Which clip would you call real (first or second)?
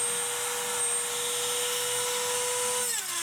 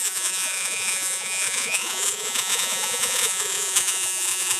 first